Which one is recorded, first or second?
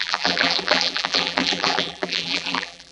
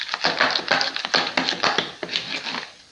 second